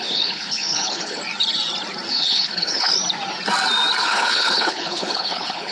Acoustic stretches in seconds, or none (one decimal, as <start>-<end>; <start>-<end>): 1.2-2.1; 2.9-4.0